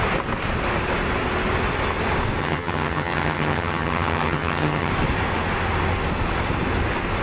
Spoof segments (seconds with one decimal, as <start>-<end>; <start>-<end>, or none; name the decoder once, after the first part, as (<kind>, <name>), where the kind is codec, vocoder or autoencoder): 2.4-4.9 (vocoder, HiFi-GAN)